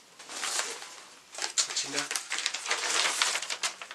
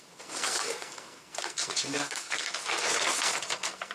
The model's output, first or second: second